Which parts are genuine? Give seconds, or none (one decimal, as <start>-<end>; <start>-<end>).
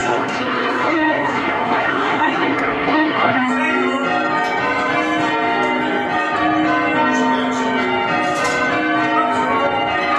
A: 3.5-10.2